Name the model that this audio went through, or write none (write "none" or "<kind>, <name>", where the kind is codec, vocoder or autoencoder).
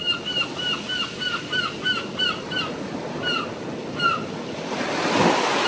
none